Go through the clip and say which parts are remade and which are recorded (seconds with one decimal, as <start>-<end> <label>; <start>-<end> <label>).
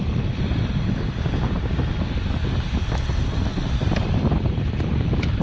0.0-3.5 recorded; 3.5-4.8 remade; 4.8-5.4 recorded